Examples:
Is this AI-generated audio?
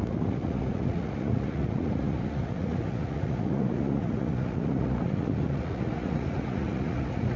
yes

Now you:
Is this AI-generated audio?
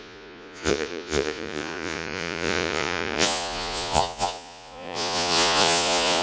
yes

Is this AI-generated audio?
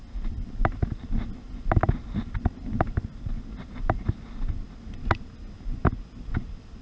no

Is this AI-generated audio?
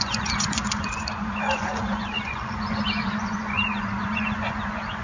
yes